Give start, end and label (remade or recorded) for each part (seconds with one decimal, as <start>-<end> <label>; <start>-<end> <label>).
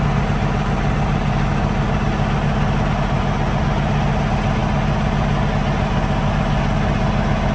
0.0-7.5 recorded